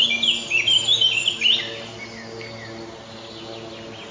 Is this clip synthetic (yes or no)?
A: no